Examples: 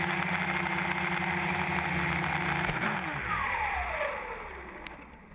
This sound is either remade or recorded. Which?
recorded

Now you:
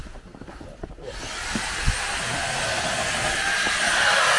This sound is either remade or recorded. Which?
recorded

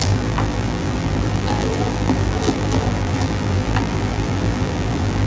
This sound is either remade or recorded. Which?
remade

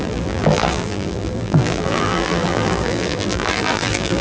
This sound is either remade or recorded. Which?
remade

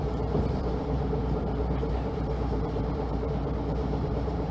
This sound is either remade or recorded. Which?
remade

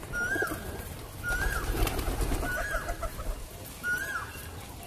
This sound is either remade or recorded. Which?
recorded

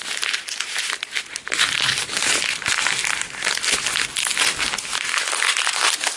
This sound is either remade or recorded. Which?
recorded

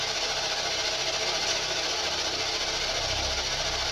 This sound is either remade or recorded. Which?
recorded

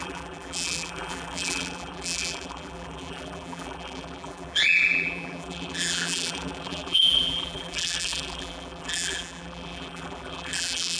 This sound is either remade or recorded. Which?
remade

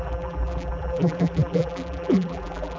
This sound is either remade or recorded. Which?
remade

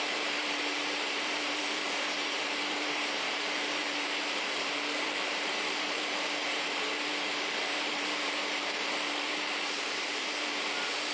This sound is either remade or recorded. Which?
remade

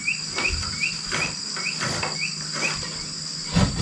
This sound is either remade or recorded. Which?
recorded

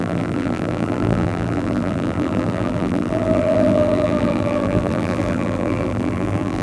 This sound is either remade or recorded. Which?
remade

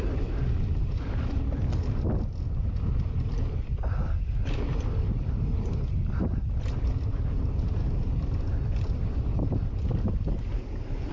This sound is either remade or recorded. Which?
recorded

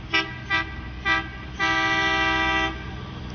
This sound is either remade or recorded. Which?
recorded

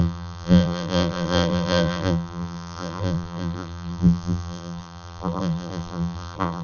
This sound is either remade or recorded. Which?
remade